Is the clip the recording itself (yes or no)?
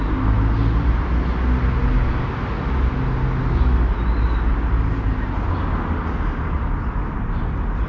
yes